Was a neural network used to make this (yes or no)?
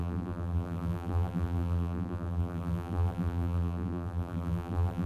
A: yes